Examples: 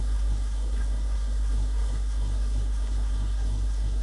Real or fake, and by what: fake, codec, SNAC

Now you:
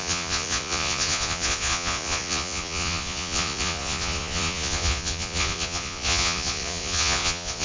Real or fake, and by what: fake, vocoder, Vocos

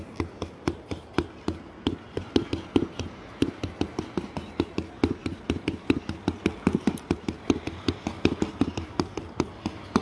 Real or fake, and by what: real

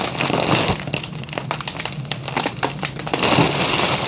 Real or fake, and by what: real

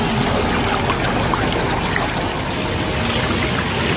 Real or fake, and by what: real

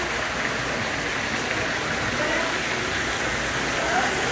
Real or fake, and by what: real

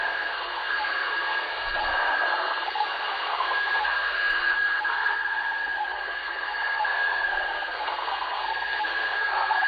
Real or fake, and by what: fake, codec, SNAC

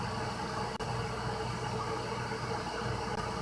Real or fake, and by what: real